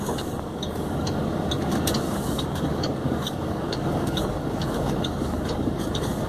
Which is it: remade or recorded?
remade